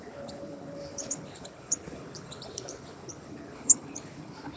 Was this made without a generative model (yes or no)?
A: no